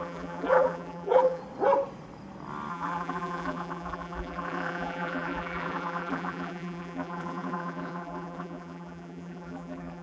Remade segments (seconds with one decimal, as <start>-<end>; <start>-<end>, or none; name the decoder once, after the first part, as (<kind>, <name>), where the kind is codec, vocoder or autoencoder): 0.0-1.4 (vocoder, BigVGAN v2); 2.7-10.0